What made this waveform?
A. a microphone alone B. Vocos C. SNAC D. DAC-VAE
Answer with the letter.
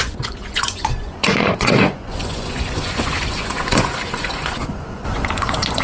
B